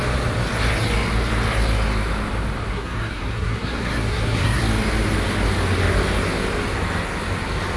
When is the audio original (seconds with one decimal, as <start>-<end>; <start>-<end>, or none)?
0.0-2.7; 4.6-7.8